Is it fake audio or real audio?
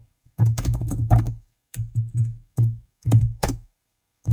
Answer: fake